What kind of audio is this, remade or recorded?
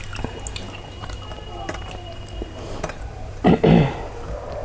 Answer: recorded